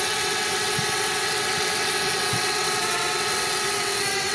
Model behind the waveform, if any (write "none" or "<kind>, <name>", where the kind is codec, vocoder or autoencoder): vocoder, WaveNeXt